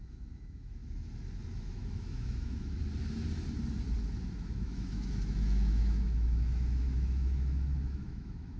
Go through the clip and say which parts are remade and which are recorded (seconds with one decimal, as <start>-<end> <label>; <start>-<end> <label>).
0.0-0.8 remade; 0.8-1.6 recorded; 1.6-2.8 remade; 2.8-4.3 recorded; 4.3-8.6 remade